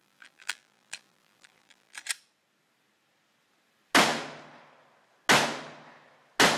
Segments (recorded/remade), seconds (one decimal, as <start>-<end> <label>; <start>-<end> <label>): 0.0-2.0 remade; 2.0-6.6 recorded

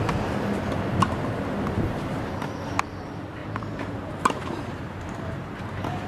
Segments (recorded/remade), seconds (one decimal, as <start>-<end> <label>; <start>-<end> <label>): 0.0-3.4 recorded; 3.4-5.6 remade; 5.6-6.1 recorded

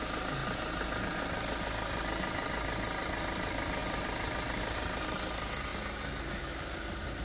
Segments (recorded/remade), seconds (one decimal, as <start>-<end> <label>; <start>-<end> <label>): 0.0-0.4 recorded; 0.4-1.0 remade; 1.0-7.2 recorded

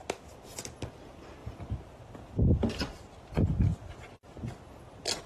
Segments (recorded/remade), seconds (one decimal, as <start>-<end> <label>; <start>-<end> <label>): 0.0-5.3 recorded

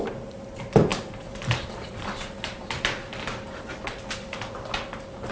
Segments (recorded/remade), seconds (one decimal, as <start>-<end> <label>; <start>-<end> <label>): 0.0-0.9 recorded; 0.9-3.8 remade; 3.8-5.3 recorded